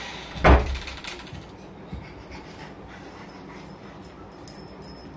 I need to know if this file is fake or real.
real